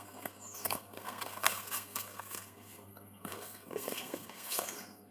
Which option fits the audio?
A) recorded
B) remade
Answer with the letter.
B